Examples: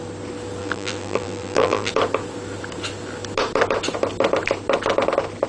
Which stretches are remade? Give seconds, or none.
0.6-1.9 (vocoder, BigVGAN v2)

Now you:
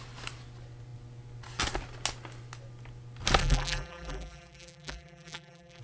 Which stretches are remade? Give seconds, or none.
3.4-5.8 (vocoder, BigVGAN v2)

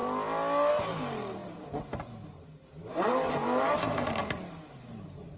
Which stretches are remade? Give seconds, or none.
0.7-5.4 (vocoder, BigVGAN v2)

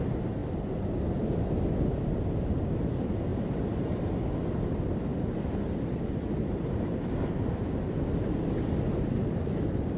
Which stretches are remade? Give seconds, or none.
5.1-7.0 (vocoder, BigVGAN v2)

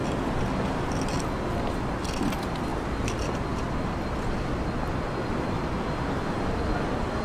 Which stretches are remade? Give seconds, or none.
2.2-2.7 (vocoder, BigVGAN v2); 5.2-7.2

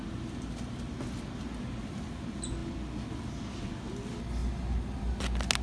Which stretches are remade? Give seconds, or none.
4.4-5.1 (vocoder, BigVGAN v2)

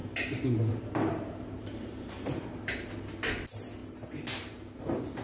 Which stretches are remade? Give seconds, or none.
0.0-3.0 (vocoder, BigVGAN v2); 3.8-4.8